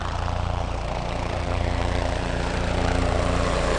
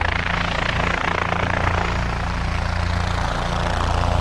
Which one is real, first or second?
second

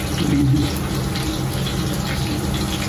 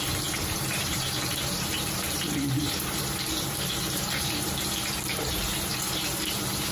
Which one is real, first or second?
first